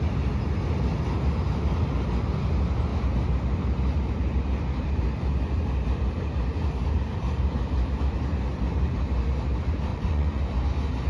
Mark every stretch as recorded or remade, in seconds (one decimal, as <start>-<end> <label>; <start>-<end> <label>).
0.0-9.9 recorded; 9.9-10.4 remade; 10.4-11.1 recorded

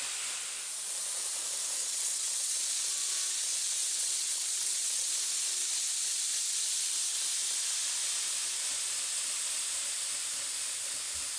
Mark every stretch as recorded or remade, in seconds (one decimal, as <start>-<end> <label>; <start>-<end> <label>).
0.0-1.8 recorded; 1.8-2.6 remade; 2.6-3.8 recorded; 3.8-5.1 remade; 5.1-11.4 recorded

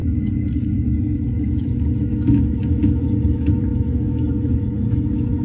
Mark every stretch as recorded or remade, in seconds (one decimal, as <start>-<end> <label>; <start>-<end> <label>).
0.0-5.4 remade